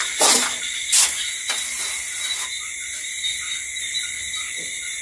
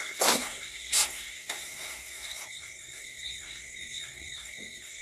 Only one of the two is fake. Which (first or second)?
second